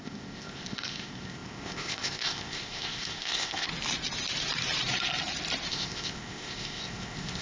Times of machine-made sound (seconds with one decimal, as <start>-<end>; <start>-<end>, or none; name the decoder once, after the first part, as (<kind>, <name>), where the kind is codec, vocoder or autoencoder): 0.0-3.7 (codec, ZipCodec); 5.7-7.4